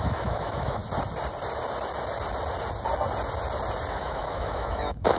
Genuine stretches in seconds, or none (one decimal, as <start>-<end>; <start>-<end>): 0.8-3.9